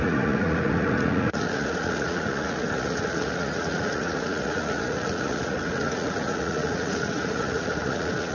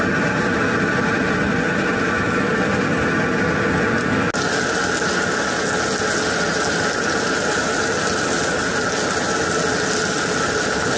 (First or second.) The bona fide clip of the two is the second